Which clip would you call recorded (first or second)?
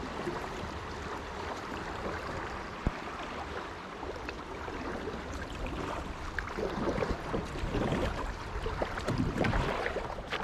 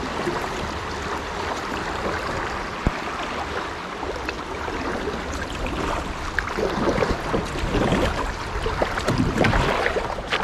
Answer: second